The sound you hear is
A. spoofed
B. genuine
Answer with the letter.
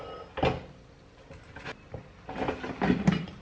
B